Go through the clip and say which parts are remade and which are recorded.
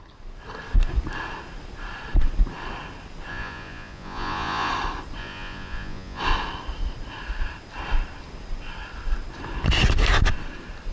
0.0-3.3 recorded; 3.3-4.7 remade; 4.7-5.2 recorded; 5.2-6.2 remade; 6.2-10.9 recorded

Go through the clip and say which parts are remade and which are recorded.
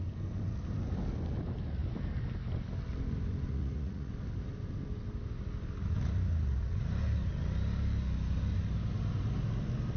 0.0-3.5 recorded; 3.5-4.1 remade; 4.1-10.0 recorded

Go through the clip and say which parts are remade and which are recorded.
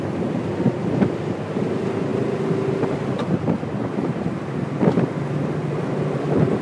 0.0-6.6 recorded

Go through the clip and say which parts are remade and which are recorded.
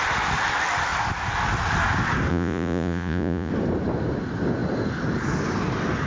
0.0-2.3 recorded; 2.3-3.5 remade; 3.5-6.1 recorded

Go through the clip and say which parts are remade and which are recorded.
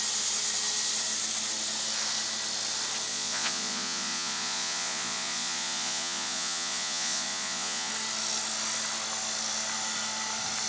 0.0-3.1 recorded; 3.1-7.9 remade; 7.9-10.7 recorded